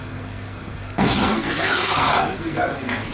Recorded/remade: remade